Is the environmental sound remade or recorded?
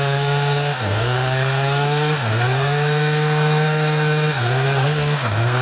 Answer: remade